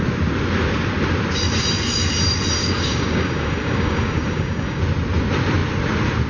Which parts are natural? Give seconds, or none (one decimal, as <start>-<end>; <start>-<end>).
0.0-2.6; 4.8-6.3